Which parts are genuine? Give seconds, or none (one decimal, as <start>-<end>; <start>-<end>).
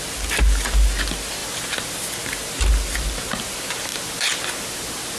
0.0-5.2